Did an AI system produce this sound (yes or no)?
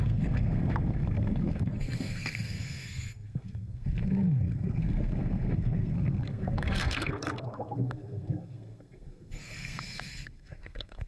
yes